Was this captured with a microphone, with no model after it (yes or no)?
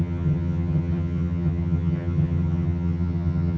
no